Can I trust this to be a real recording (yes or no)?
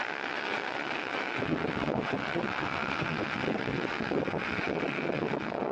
no